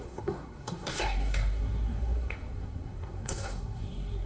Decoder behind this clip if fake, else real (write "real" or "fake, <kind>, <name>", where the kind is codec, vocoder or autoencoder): fake, codec, SNAC